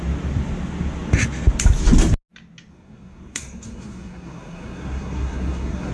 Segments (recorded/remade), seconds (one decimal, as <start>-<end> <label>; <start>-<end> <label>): 0.0-2.7 recorded; 2.7-5.9 remade